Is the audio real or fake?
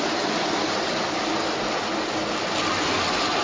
real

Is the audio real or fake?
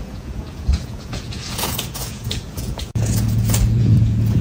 fake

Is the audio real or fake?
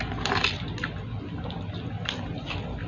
real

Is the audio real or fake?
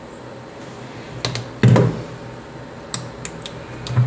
real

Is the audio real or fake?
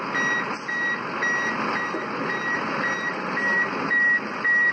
real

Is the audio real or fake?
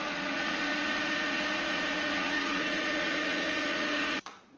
fake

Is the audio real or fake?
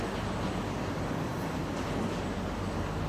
real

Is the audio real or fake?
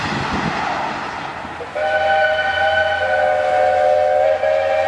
real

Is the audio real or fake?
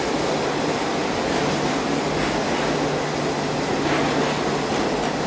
real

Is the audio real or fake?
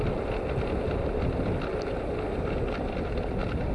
real